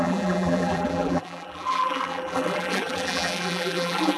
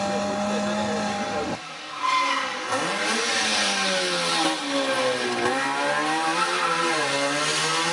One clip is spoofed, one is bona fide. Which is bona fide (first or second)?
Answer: second